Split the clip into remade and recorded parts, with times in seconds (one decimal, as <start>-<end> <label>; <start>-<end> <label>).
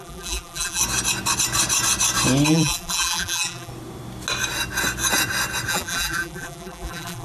0.0-0.8 remade; 0.8-2.5 recorded; 2.5-3.7 remade; 3.7-5.7 recorded; 5.7-7.2 remade